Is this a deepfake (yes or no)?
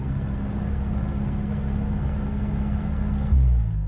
yes